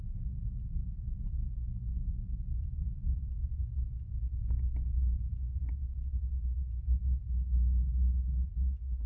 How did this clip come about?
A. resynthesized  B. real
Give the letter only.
B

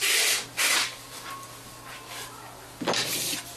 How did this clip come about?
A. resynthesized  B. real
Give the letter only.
B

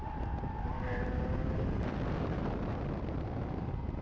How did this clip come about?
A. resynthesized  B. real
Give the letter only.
B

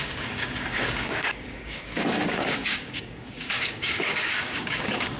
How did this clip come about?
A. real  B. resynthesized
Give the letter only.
B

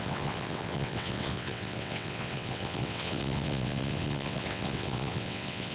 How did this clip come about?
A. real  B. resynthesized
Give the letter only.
B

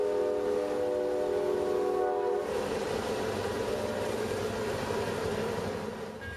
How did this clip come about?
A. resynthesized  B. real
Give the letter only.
B